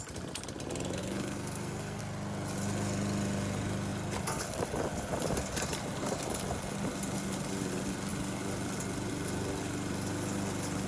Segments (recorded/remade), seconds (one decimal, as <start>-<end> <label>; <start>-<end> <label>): 0.0-1.0 recorded; 1.0-2.0 remade; 2.0-10.9 recorded

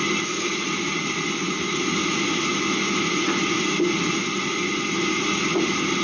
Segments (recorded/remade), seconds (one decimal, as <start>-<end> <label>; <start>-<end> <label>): 0.0-6.0 recorded